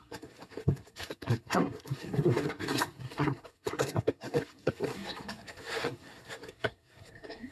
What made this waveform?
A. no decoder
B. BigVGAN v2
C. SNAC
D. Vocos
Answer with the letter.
C